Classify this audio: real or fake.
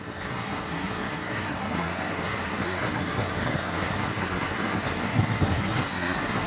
fake